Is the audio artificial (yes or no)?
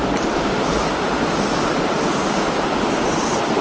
yes